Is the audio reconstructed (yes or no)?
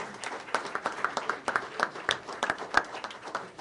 yes